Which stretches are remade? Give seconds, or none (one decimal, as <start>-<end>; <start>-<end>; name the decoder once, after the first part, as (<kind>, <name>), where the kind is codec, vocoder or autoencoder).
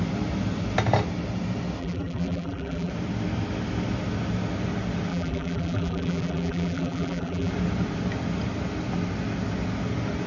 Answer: 1.8-2.9 (vocoder, BigVGAN v2); 5.1-7.5